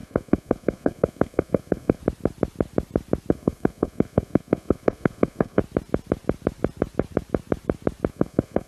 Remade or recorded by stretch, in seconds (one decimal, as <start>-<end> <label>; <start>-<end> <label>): 0.0-2.0 remade; 2.0-3.3 recorded; 3.3-5.6 remade; 5.6-8.1 recorded; 8.1-8.7 remade